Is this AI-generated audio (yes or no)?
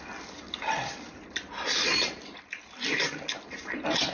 no